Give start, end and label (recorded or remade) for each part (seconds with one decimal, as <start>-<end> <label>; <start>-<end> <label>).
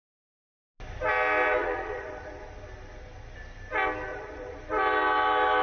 0.0-1.6 recorded; 1.6-2.5 remade; 2.5-4.1 recorded; 4.1-4.6 remade; 4.6-5.6 recorded